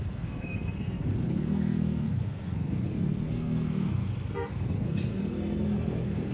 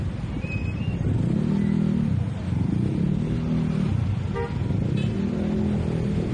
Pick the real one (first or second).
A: second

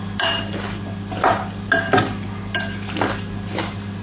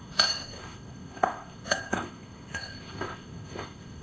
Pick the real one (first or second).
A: first